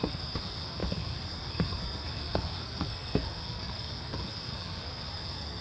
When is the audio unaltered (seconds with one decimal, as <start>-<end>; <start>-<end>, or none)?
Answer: none

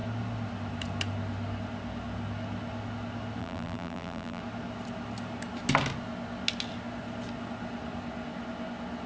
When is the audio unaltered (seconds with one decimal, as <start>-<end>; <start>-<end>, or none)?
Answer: 0.0-3.4; 4.4-9.1

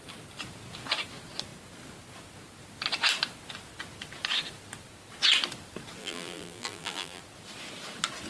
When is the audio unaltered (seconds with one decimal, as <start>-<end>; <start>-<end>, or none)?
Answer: 0.0-6.0; 7.2-8.3